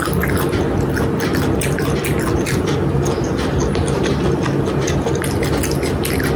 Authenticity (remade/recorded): recorded